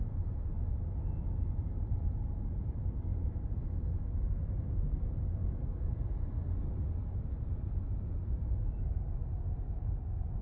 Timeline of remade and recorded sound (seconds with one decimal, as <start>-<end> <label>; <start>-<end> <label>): 0.0-10.4 recorded